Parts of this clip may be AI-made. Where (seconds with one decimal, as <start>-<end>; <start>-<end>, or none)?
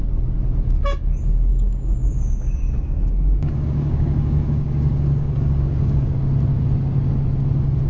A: 1.5-6.2